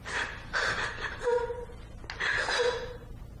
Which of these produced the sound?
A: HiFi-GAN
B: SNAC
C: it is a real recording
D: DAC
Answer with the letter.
C